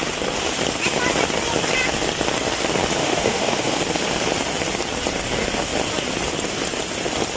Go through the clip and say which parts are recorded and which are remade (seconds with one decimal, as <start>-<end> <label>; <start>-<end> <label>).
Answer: 0.0-3.0 recorded; 3.0-3.8 remade; 3.8-7.4 recorded